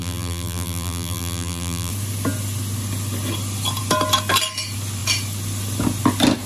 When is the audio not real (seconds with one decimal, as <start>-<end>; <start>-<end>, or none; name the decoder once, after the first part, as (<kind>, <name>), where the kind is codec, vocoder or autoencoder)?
0.0-1.9 (vocoder, BigVGAN v2)